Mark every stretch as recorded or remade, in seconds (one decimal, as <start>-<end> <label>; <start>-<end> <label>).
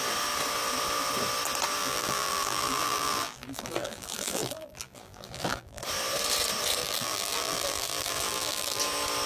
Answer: 0.0-1.8 recorded; 1.8-5.8 remade; 5.8-6.8 recorded; 6.8-8.8 remade; 8.8-9.3 recorded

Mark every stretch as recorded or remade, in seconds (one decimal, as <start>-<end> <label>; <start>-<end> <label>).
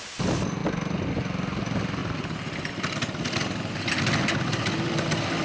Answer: 0.0-0.6 remade; 0.6-1.6 recorded; 1.6-2.0 remade; 2.0-4.2 recorded; 4.2-5.4 remade